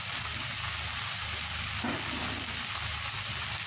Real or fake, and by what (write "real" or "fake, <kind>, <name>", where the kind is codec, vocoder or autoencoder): real